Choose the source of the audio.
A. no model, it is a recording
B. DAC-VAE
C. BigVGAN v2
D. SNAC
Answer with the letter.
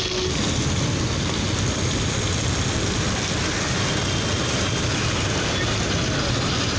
A